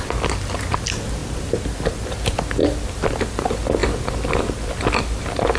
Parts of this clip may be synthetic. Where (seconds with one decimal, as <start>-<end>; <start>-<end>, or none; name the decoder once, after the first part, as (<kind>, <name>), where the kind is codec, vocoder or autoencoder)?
none